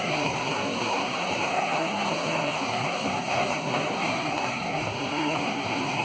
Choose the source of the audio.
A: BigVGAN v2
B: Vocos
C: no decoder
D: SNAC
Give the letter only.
D